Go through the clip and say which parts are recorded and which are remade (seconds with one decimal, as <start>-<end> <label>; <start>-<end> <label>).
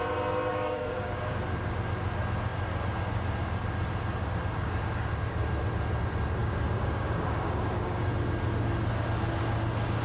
0.0-0.5 recorded; 0.5-1.3 remade; 1.3-6.4 recorded; 6.4-8.1 remade; 8.1-10.0 recorded